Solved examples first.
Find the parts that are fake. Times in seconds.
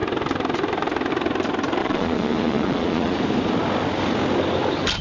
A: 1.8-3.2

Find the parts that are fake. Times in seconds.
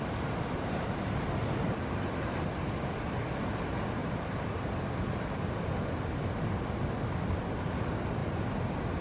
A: 4.0-6.2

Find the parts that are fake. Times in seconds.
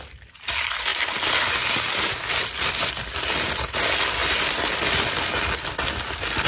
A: none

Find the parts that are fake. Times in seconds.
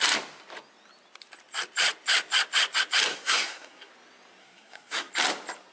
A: 3.1-3.9; 4.4-5.1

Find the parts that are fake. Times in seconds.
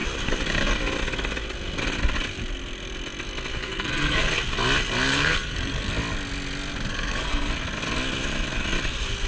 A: 3.5-4.3; 5.1-5.9; 6.9-7.5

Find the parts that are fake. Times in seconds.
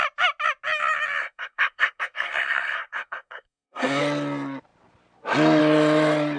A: 1.2-4.0